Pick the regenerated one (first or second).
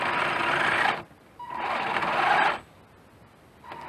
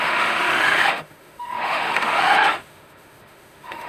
second